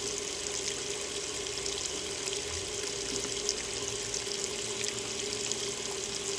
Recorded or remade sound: recorded